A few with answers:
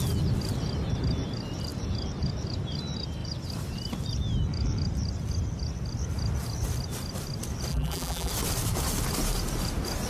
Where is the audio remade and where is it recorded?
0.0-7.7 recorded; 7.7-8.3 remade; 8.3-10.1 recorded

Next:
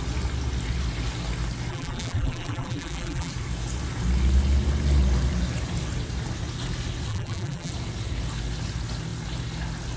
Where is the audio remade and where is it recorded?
0.0-1.7 recorded; 1.7-3.3 remade; 3.3-7.1 recorded; 7.1-7.7 remade; 7.7-10.0 recorded

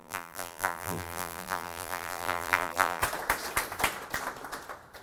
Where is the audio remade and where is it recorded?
0.0-3.0 remade; 3.0-5.0 recorded

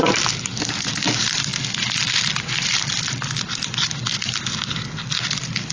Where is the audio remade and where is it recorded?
0.0-5.7 recorded

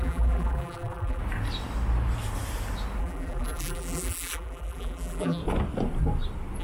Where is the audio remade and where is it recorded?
0.0-1.2 remade; 1.2-3.0 recorded; 3.0-5.4 remade; 5.4-6.6 recorded

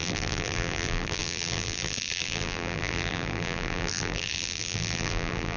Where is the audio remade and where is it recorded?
0.0-5.6 remade